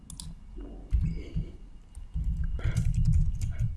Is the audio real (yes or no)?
yes